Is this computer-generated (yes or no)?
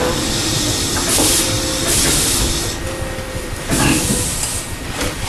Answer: no